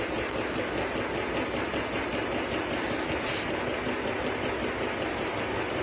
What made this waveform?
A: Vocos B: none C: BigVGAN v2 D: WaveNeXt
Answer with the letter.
B